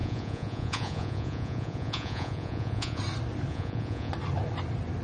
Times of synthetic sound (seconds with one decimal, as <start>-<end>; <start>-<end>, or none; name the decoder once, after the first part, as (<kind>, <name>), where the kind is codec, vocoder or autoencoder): 0.0-3.0 (vocoder, Vocos); 3.5-4.1